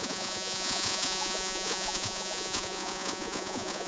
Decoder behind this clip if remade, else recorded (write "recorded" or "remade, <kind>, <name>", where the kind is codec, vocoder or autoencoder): remade, vocoder, Vocos